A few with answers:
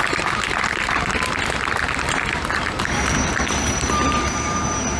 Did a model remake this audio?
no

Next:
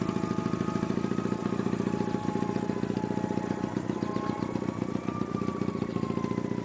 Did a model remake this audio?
no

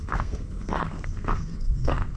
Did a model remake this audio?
yes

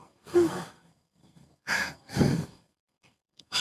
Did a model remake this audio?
yes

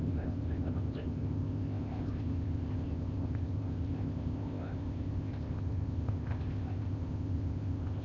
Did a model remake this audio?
yes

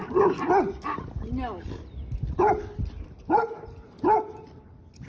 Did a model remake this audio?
no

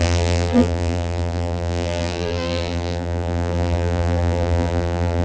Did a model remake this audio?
yes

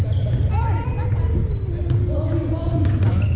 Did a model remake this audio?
no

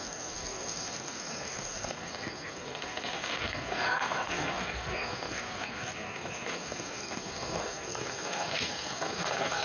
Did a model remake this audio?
yes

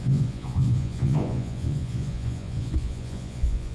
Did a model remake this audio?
yes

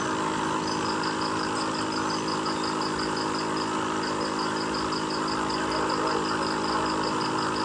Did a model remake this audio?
no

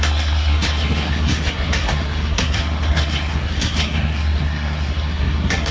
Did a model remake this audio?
yes